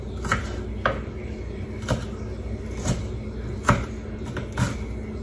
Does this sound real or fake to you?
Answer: real